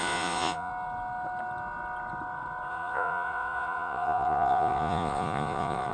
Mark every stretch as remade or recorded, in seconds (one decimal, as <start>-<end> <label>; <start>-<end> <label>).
0.0-0.7 remade; 0.7-2.7 recorded; 2.7-5.9 remade

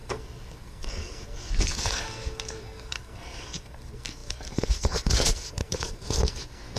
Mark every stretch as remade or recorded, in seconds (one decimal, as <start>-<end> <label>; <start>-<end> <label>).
0.0-6.8 remade